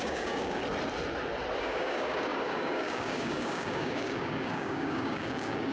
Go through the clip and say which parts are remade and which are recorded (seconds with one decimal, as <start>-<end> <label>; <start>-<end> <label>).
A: 0.0-0.6 remade; 0.6-1.6 recorded; 1.6-5.7 remade